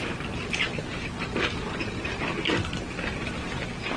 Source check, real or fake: real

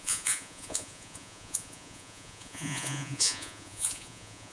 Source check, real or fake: fake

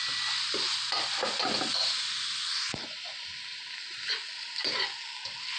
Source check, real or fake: real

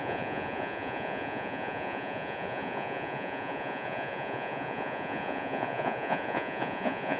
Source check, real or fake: fake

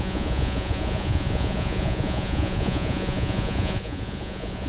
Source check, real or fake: fake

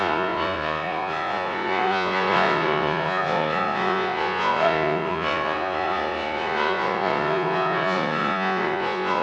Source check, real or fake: fake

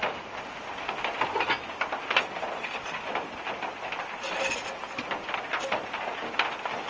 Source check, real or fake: real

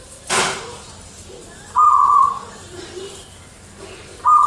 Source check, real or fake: real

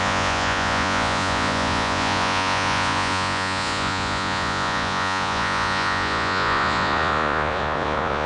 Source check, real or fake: fake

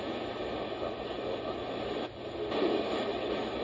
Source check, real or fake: real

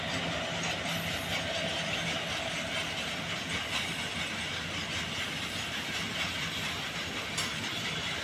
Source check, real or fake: real